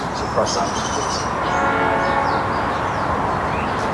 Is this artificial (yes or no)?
no